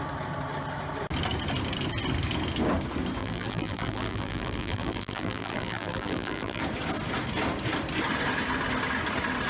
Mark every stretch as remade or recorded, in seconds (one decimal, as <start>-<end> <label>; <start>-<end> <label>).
0.0-3.2 recorded; 3.2-6.6 remade; 6.6-9.5 recorded